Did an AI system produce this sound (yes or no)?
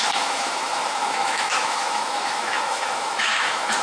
yes